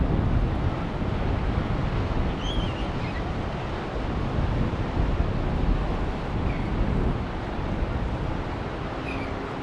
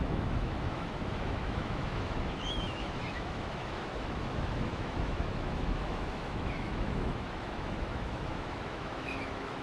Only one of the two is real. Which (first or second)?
first